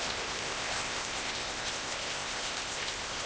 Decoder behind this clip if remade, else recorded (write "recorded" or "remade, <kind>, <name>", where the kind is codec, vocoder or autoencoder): remade, codec, ZipCodec